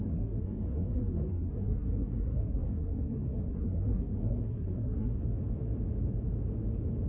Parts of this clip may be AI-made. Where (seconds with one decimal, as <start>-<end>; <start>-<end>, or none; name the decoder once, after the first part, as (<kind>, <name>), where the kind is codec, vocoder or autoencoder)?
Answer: 0.0-5.2 (codec, SNAC)